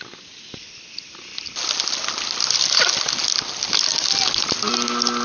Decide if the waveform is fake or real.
real